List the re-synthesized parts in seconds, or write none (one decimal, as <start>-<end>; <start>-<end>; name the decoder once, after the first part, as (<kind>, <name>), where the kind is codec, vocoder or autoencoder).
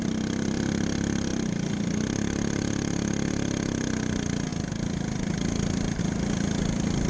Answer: none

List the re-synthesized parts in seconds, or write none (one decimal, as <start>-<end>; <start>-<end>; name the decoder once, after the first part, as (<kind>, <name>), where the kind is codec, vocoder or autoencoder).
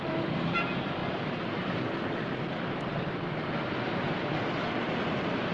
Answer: none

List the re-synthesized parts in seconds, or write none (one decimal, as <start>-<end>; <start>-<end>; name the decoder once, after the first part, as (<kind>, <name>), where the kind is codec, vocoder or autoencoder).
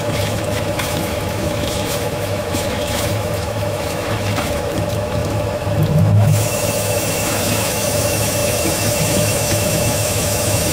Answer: 0.0-10.7 (autoencoder, DAC-VAE)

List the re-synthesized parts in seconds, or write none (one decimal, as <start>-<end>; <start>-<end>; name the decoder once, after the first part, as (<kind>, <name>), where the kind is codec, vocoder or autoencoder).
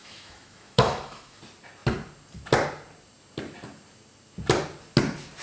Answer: 0.0-1.4 (autoencoder, DAC-VAE)